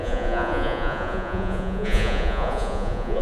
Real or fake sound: fake